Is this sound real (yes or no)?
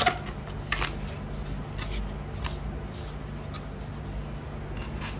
yes